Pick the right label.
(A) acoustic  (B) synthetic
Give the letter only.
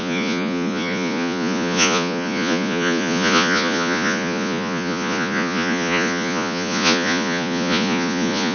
B